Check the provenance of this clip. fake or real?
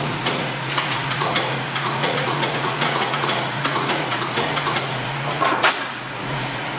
fake